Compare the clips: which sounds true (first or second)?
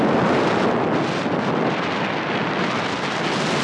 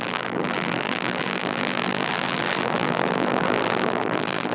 first